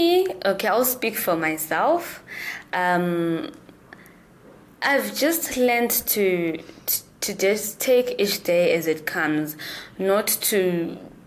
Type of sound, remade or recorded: recorded